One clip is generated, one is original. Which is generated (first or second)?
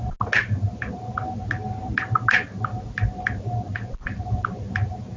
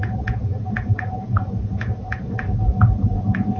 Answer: second